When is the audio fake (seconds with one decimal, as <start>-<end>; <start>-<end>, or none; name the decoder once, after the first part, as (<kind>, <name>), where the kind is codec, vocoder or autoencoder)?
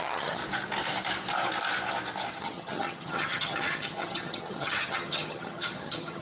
0.0-0.4 (vocoder, HiFi-GAN); 2.3-6.2